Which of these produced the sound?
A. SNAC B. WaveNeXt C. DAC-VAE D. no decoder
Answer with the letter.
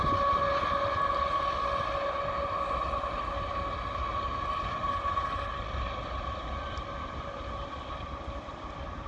D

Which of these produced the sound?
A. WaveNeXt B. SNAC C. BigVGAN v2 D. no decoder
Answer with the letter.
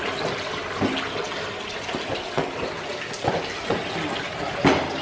D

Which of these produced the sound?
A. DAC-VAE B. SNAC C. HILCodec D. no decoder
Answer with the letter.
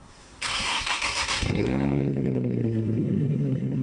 B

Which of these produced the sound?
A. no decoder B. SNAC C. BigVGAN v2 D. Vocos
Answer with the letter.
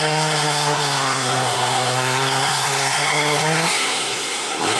B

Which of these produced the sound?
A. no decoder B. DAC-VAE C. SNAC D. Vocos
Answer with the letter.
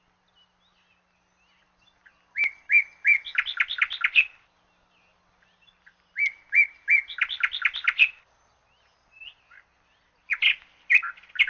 A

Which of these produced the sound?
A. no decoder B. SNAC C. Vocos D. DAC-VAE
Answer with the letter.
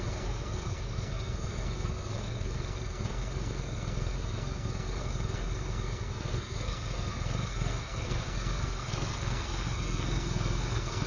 B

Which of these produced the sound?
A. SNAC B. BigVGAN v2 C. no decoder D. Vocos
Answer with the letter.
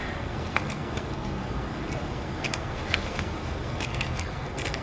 A